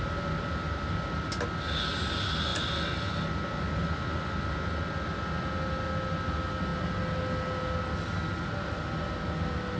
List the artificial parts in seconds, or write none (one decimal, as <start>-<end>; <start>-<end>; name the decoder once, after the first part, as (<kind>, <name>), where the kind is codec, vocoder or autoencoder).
none